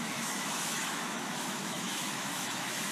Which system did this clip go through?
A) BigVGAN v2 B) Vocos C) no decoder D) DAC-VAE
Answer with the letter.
D